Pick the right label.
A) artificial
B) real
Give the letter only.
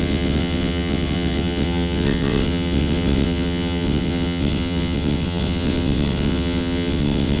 A